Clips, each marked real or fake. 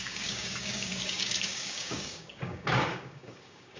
fake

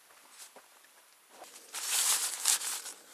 real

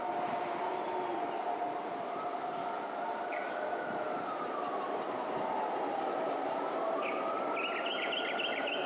real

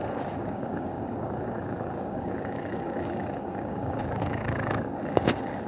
fake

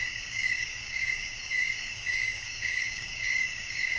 fake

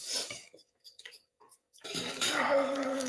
fake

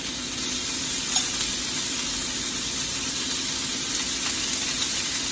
real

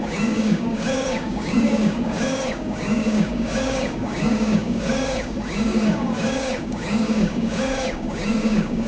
fake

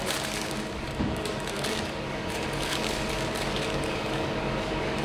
fake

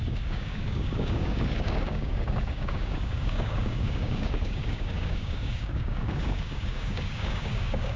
fake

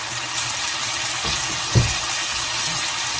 real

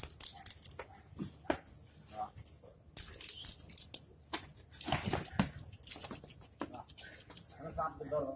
real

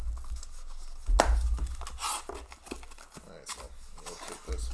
real